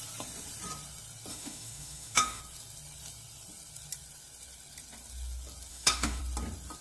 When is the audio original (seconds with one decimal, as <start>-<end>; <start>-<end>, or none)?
0.0-1.3; 2.4-5.7; 6.2-6.8